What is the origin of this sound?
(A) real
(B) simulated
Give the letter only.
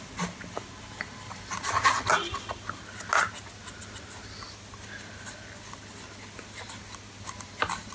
A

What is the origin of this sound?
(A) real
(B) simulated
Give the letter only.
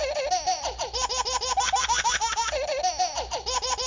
B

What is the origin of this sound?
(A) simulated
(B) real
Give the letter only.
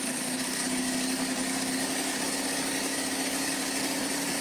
A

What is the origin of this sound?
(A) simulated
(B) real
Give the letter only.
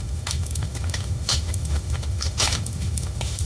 A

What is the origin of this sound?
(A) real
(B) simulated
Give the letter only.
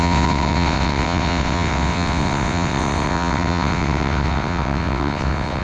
B